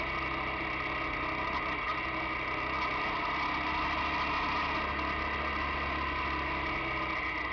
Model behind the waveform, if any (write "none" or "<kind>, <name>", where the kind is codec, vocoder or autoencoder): none